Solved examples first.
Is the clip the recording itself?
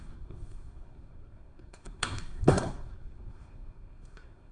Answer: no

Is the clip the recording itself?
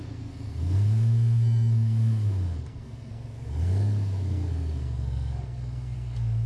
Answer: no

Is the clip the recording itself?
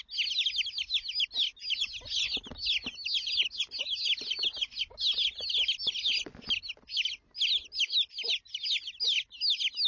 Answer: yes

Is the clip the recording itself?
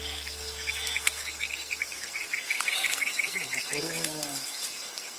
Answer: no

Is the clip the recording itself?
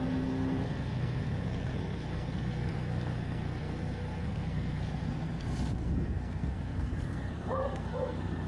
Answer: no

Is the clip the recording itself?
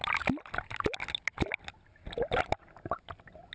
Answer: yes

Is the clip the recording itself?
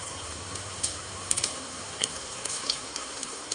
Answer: no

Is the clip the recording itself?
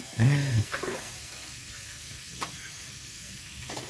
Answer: no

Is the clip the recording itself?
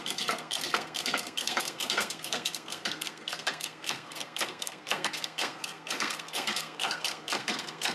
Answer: no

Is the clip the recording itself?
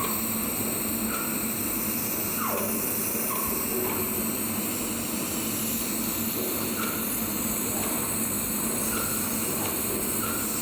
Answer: yes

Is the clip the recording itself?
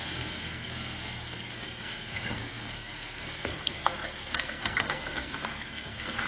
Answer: no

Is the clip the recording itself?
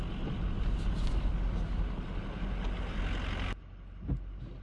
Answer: yes